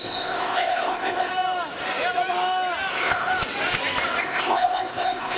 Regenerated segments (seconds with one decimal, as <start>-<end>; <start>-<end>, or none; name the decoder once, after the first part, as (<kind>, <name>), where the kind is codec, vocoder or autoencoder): 0.0-1.3 (codec, ZipCodec); 2.9-3.3; 4.2-5.4